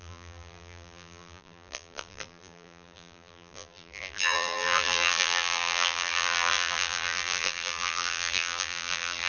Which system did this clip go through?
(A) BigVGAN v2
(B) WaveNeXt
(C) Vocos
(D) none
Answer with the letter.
A